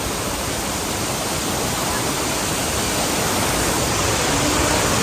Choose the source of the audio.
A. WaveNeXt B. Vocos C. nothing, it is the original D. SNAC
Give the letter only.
C